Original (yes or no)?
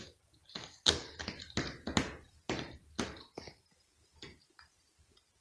yes